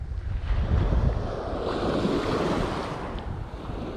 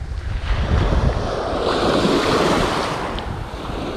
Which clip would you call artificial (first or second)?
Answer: second